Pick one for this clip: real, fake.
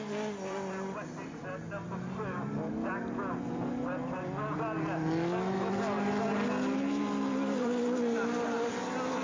real